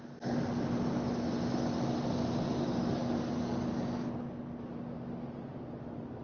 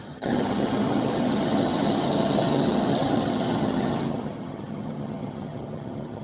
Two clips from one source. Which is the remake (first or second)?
second